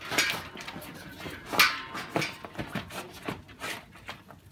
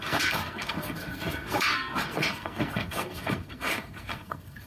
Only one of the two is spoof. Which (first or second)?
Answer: second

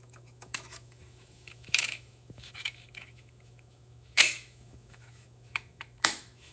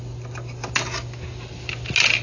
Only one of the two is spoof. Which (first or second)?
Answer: first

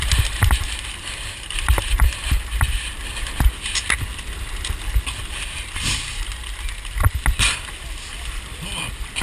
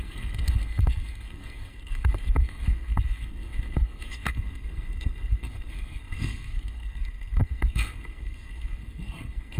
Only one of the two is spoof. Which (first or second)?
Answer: second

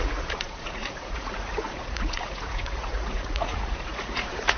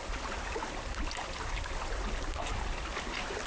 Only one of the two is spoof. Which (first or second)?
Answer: first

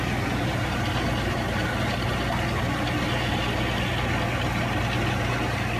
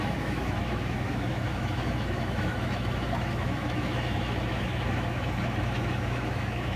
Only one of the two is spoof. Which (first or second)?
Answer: second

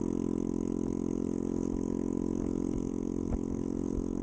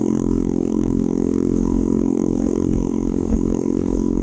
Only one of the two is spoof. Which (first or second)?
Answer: second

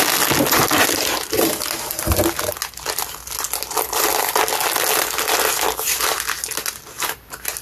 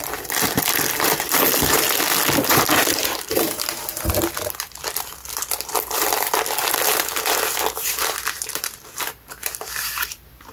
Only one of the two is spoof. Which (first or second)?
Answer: second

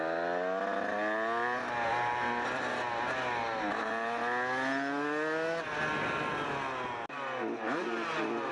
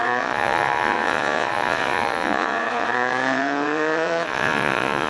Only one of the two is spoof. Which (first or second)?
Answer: second